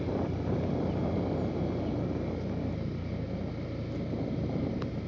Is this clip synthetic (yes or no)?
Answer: no